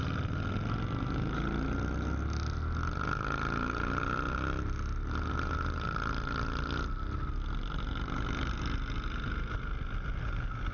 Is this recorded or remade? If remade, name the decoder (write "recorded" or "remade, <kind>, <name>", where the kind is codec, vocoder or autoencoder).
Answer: recorded